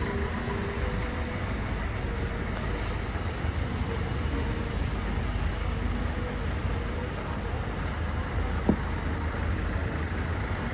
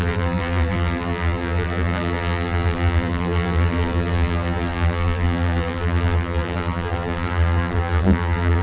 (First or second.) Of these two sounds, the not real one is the second